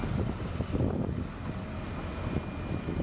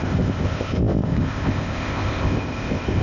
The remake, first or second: second